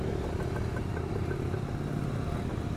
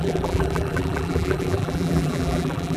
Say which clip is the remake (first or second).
second